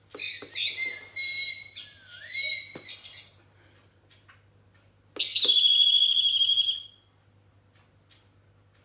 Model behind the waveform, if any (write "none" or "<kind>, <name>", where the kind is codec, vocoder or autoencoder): none